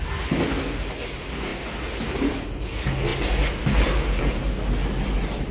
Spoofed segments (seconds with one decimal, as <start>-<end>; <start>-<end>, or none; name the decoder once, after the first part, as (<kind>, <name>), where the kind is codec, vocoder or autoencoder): none